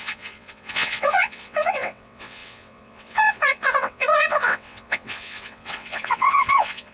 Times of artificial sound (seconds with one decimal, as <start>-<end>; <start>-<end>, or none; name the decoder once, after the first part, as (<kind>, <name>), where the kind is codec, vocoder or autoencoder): 0.0-6.9 (vocoder, WaveNeXt)